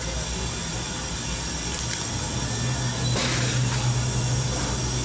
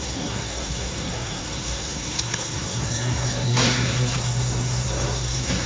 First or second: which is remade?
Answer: second